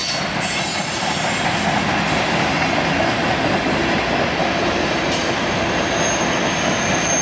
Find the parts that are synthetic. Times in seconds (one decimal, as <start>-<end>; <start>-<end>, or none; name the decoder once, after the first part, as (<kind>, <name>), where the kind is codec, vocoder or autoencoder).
4.4-5.7 (vocoder, BigVGAN v2)